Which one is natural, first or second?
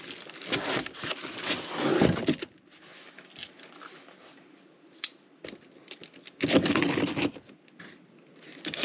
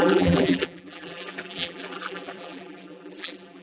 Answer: first